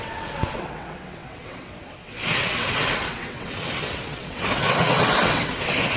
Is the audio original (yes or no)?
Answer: no